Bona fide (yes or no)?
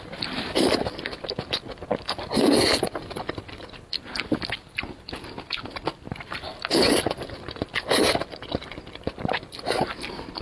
yes